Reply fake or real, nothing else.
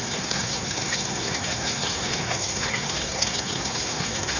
fake